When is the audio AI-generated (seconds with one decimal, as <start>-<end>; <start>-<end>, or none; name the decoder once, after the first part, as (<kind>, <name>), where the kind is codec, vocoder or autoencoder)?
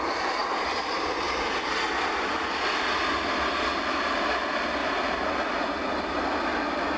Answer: 4.8-6.2 (vocoder, BigVGAN v2)